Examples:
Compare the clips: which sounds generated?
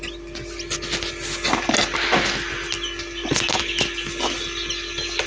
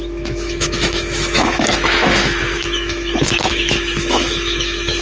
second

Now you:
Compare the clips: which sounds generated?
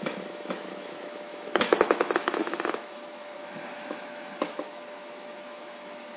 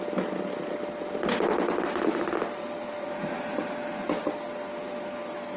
first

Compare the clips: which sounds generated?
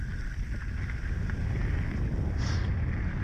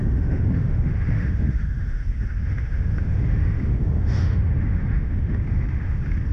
second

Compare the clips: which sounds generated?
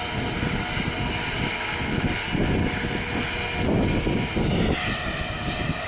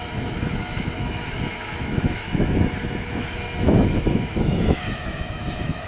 second